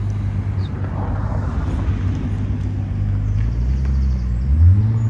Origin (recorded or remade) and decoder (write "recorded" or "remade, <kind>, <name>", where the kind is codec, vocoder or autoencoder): recorded